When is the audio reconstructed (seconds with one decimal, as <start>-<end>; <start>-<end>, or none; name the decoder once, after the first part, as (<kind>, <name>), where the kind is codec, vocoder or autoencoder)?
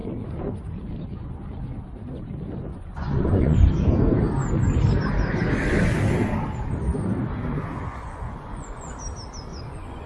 2.7-3.7 (vocoder, Vocos); 7.9-8.9; 9.5-10.1